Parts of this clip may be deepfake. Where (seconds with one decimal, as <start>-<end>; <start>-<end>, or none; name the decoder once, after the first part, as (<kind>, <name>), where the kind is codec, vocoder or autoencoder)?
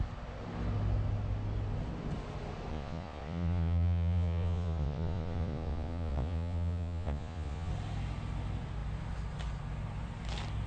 2.7-7.7 (vocoder, Vocos)